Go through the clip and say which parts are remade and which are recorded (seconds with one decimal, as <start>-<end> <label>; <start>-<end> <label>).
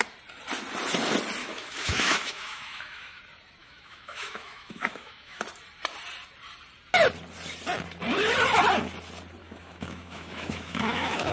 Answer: 0.0-1.4 recorded; 1.4-3.2 remade; 3.2-3.6 recorded; 3.6-5.4 remade; 5.4-9.4 recorded; 9.4-11.3 remade